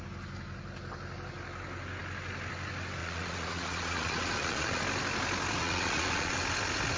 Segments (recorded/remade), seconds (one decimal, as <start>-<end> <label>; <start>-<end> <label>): 0.0-3.0 recorded; 3.0-4.8 remade; 4.8-5.6 recorded; 5.6-6.4 remade; 6.4-7.0 recorded